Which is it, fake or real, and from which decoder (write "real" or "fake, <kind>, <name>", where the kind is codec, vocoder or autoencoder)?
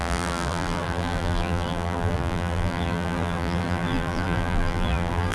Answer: fake, vocoder, BigVGAN v2